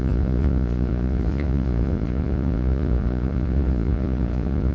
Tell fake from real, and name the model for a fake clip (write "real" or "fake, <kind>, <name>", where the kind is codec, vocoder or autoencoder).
fake, vocoder, Vocos